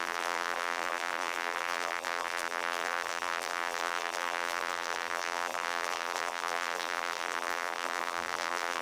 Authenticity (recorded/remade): remade